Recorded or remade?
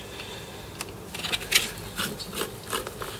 recorded